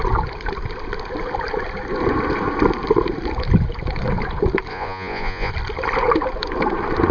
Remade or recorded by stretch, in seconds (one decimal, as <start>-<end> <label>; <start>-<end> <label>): 0.0-4.7 recorded; 4.7-5.5 remade; 5.5-7.1 recorded